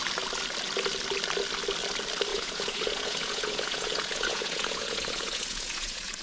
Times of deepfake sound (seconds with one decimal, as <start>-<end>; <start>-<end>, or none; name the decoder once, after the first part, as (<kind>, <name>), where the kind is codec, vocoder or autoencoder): 2.3-6.2 (vocoder, Vocos)